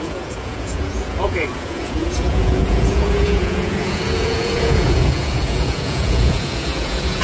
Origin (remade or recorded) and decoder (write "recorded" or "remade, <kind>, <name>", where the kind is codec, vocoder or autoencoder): remade, vocoder, Vocos